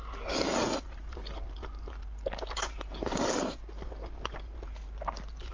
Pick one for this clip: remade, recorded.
recorded